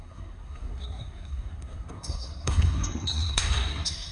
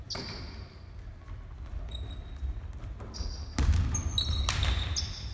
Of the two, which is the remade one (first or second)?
first